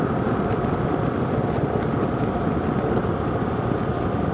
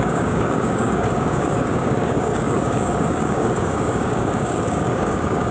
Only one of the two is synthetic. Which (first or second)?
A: second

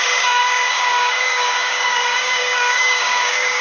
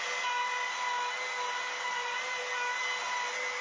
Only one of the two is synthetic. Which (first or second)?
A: first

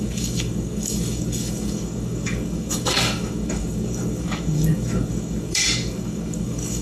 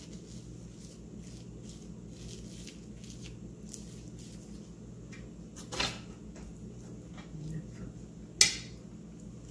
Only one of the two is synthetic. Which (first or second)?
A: first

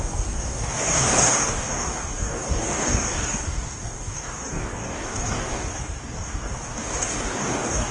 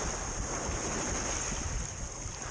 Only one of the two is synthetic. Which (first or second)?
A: first